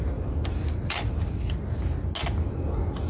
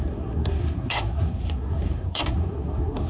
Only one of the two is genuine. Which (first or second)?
first